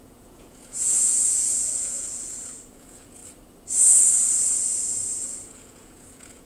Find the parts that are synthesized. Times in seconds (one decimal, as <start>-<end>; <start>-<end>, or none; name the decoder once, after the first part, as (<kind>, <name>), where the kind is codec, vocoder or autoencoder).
0.0-3.2 (vocoder, Vocos); 5.2-6.5